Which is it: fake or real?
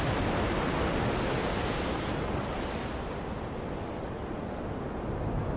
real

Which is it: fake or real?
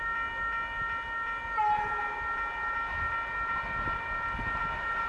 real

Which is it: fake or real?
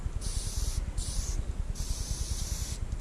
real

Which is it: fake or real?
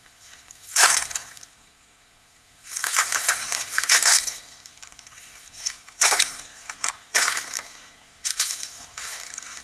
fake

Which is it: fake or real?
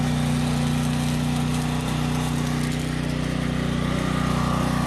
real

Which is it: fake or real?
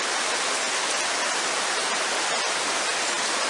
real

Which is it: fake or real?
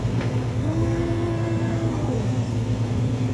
fake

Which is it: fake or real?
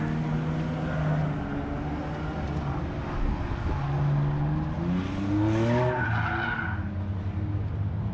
real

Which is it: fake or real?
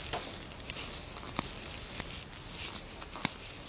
real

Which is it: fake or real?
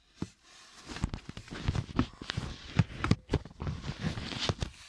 real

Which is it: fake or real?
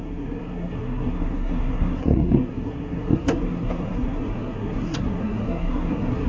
fake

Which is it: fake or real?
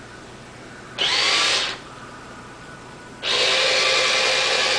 real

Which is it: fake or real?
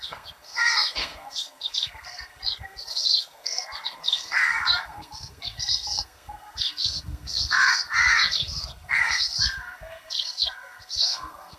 fake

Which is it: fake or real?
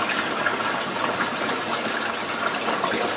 real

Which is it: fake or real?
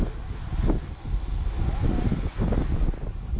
real